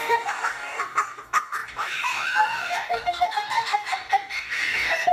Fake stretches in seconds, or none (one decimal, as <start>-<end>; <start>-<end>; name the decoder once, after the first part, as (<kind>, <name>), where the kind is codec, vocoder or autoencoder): 0.0-5.1 (codec, DAC)